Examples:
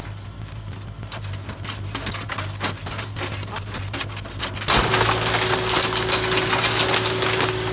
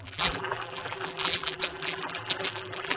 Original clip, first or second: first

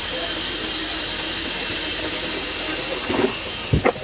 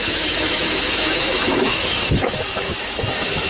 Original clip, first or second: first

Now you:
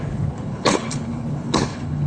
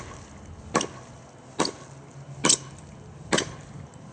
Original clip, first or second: second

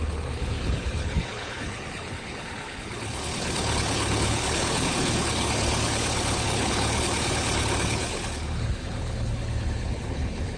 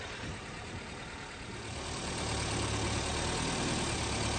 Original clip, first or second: second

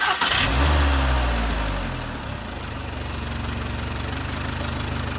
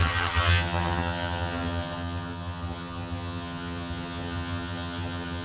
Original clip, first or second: first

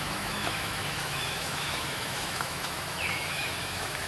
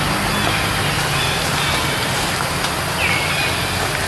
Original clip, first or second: second